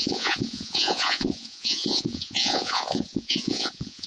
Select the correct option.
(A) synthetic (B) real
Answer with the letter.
A